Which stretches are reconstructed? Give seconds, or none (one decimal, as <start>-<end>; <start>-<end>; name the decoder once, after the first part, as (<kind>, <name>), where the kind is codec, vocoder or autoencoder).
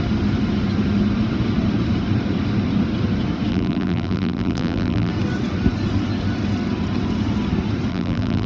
3.5-5.1 (vocoder, BigVGAN v2); 7.9-8.5